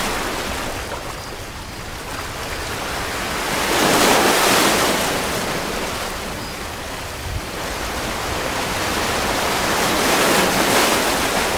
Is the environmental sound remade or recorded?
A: recorded